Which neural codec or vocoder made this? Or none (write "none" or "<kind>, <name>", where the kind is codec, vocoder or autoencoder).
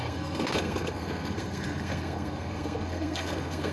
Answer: codec, SNAC